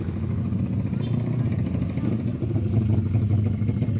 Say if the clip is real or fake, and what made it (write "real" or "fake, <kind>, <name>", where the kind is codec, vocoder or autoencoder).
real